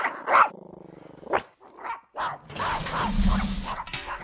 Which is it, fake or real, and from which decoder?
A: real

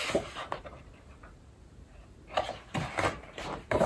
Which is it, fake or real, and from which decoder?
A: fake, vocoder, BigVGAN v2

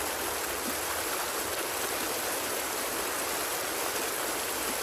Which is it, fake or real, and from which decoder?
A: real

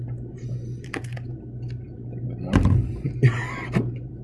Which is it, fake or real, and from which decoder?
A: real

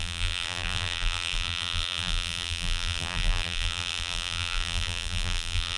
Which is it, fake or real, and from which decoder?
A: fake, vocoder, BigVGAN v2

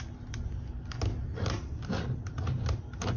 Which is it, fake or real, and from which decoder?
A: real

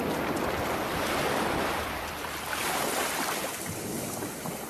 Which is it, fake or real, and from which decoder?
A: real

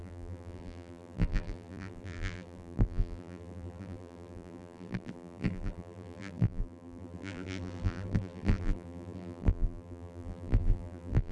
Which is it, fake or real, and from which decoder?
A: fake, vocoder, BigVGAN v2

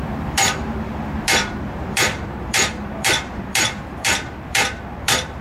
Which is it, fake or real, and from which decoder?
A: fake, vocoder, BigVGAN v2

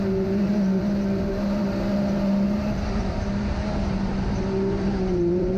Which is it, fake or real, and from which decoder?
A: fake, vocoder, BigVGAN v2